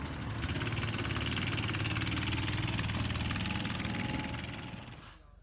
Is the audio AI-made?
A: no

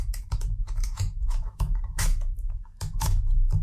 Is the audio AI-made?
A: yes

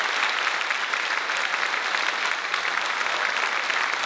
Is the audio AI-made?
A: no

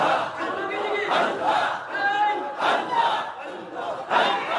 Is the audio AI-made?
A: no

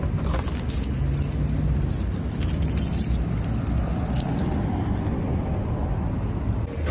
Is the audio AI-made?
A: no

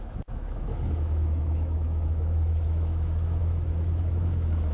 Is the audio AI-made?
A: yes